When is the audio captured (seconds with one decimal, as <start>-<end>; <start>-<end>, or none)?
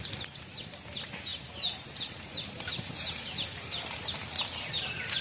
0.0-1.3; 4.4-5.2